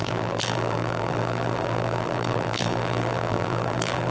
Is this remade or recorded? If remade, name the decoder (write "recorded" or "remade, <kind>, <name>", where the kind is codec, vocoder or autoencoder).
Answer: remade, vocoder, BigVGAN v2